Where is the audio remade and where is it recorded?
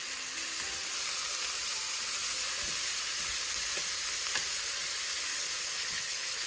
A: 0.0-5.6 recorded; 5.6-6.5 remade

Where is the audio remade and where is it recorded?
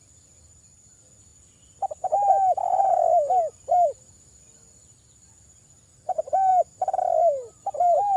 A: 0.0-8.2 recorded